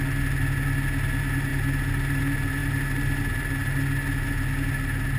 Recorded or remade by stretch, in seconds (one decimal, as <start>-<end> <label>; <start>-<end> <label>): 0.0-5.2 recorded